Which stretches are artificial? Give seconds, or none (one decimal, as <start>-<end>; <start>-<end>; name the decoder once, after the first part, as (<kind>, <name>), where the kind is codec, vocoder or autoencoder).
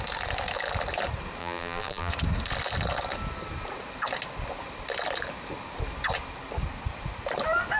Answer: 1.4-2.1 (vocoder, BigVGAN v2)